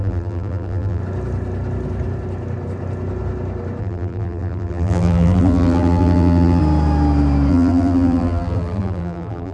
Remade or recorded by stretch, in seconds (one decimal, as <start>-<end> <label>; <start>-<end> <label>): 0.0-1.0 remade; 1.0-3.8 recorded; 3.8-6.6 remade; 6.6-7.5 recorded; 7.5-9.5 remade